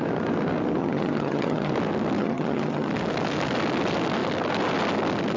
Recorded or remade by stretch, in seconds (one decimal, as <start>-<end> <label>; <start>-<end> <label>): 0.0-0.8 recorded; 0.8-1.7 remade; 1.7-2.2 recorded; 2.2-2.9 remade; 2.9-5.4 recorded